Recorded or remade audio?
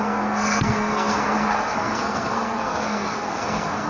remade